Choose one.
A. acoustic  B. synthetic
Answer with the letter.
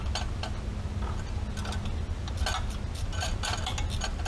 A